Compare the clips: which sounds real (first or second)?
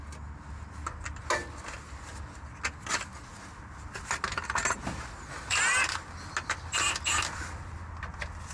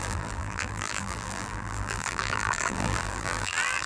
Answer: first